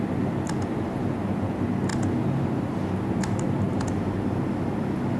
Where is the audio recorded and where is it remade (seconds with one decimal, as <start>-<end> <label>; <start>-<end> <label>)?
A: 0.0-5.2 recorded